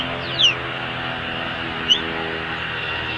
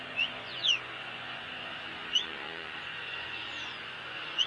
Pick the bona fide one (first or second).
first